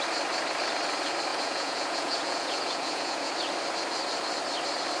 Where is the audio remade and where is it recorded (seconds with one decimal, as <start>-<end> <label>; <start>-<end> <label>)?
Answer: 0.0-1.3 recorded; 1.3-3.3 remade; 3.3-5.0 recorded

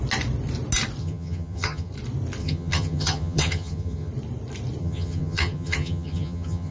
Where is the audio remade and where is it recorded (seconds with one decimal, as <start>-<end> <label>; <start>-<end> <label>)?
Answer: 0.0-1.0 recorded; 1.0-1.9 remade; 1.9-2.4 recorded; 2.4-4.1 remade; 4.1-4.8 recorded; 4.8-6.7 remade

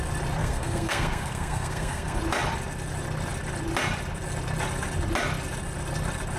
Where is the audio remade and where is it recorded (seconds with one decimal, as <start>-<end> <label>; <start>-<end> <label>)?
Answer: 0.0-0.4 recorded; 0.4-2.2 remade; 2.2-6.4 recorded

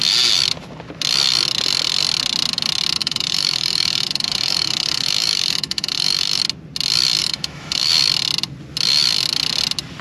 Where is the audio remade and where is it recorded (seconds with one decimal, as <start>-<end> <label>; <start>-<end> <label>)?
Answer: 0.0-3.0 recorded; 3.0-6.4 remade; 6.4-7.2 recorded; 7.2-7.9 remade; 7.9-10.0 recorded

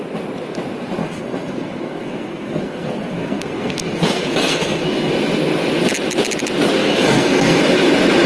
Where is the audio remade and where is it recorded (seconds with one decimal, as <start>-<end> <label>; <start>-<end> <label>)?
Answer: 0.0-1.0 recorded; 1.0-5.1 remade; 5.1-6.8 recorded; 6.8-7.6 remade; 7.6-8.3 recorded

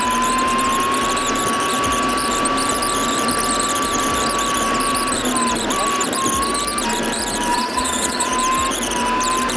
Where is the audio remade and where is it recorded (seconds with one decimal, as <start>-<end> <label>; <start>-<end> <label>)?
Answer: 0.0-7.5 recorded; 7.5-8.3 remade; 8.3-9.6 recorded

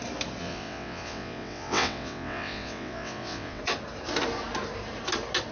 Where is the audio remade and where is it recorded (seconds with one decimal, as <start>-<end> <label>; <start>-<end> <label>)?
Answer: 0.0-0.4 recorded; 0.4-3.6 remade; 3.6-5.5 recorded

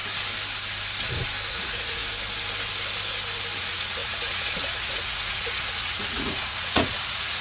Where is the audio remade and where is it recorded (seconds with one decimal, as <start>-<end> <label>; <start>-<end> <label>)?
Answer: 0.0-1.5 recorded; 1.5-2.0 remade; 2.0-3.6 recorded; 3.6-7.4 remade